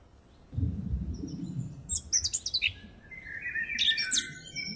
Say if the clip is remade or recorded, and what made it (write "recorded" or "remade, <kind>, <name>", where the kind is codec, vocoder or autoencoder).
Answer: recorded